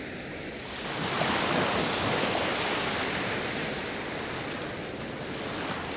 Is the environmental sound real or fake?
real